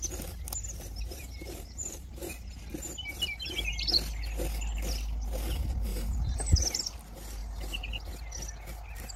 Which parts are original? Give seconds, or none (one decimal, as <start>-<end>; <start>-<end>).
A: 0.0-1.2; 2.5-5.9; 6.7-7.4; 7.9-9.2